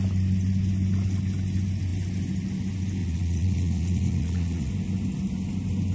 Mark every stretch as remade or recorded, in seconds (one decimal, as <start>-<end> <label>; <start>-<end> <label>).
0.0-3.0 recorded; 3.0-4.7 remade; 4.7-5.9 recorded

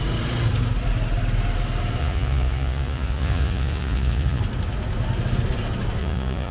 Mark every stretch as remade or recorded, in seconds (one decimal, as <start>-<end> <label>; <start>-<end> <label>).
0.0-2.0 recorded; 2.0-4.4 remade; 4.4-6.0 recorded; 6.0-6.5 remade

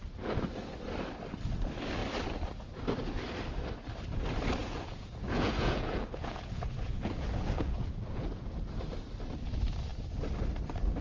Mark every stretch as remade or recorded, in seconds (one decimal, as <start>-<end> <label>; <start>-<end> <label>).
0.0-4.6 recorded; 4.6-8.8 remade; 8.8-11.0 recorded

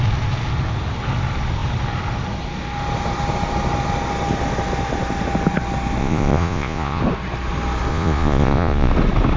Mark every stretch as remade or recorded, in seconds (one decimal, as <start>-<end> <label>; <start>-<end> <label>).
0.0-6.0 recorded; 6.0-7.0 remade; 7.0-7.9 recorded; 7.9-8.9 remade; 8.9-9.4 recorded